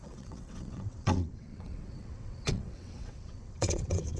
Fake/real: fake